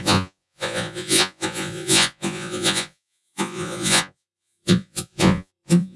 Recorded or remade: remade